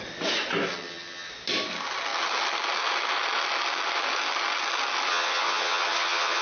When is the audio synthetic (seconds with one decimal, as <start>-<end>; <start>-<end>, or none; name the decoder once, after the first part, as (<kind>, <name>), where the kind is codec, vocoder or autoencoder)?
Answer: 0.7-1.3 (vocoder, HiFi-GAN); 5.1-6.4